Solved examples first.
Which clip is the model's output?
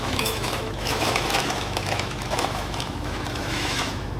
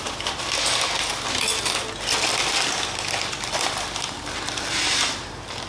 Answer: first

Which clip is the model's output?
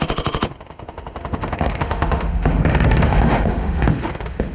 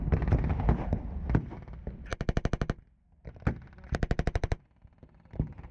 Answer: first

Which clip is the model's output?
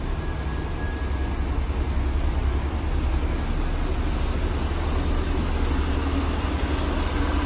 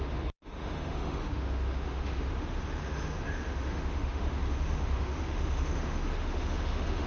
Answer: second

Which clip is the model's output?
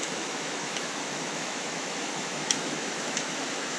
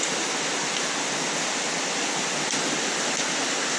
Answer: first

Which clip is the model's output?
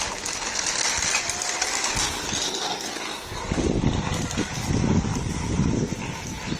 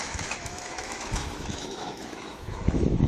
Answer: second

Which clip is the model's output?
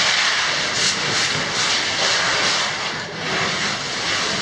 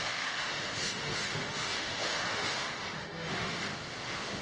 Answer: second